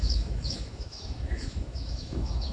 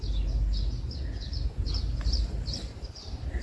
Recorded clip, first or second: second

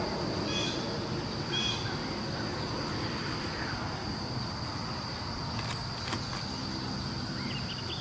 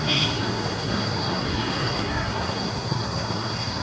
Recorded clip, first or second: first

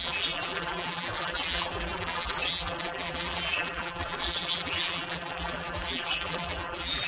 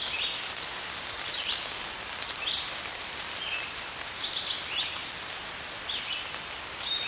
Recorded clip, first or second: second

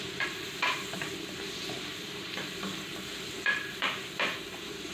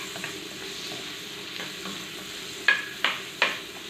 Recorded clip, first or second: second